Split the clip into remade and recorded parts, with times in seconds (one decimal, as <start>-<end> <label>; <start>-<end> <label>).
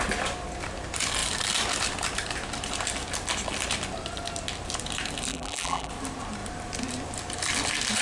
0.0-5.3 recorded; 5.3-5.9 remade; 5.9-8.0 recorded